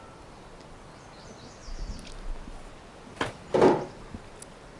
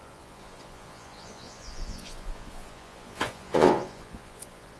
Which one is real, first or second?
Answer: first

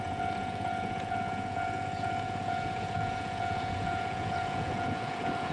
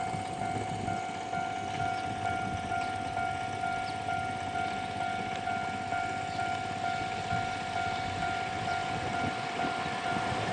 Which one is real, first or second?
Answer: second